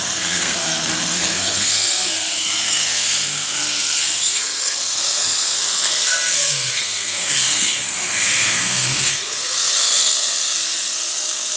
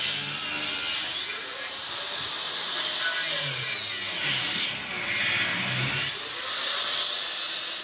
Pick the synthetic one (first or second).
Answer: first